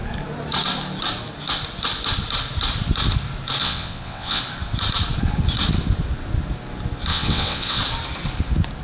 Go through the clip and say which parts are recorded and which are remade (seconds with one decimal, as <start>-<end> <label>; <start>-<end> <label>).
0.0-3.6 recorded; 3.6-4.4 remade; 4.4-7.1 recorded; 7.1-7.8 remade; 7.8-8.8 recorded